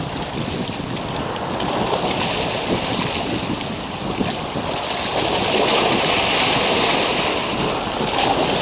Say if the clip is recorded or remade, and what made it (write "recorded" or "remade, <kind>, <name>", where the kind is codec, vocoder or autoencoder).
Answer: recorded